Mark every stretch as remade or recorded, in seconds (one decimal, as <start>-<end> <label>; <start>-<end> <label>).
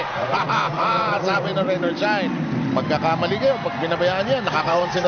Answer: 0.0-1.5 remade; 1.5-4.6 recorded; 4.6-5.1 remade